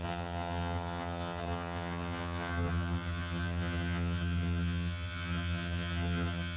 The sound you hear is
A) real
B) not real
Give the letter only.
B